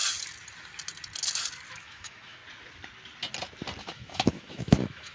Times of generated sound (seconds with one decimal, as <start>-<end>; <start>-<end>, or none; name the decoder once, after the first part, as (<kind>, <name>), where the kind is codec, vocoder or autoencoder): 1.7-2.4 (autoencoder, DAC-VAE); 3.8-5.1